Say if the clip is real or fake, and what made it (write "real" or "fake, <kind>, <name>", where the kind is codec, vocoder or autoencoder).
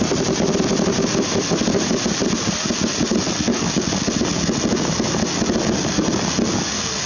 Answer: real